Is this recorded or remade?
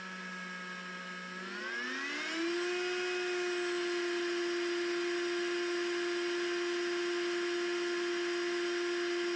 recorded